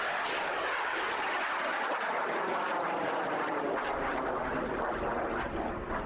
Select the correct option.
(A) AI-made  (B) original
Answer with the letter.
B